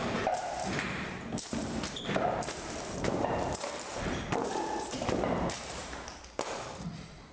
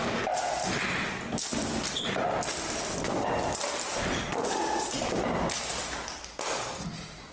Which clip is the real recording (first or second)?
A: second